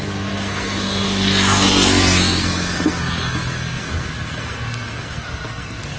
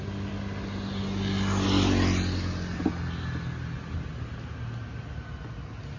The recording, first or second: second